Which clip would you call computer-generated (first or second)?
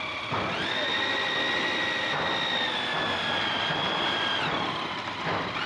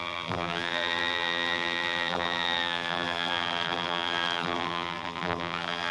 second